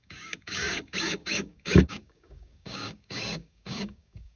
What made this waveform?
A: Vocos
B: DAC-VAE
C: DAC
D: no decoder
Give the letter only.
C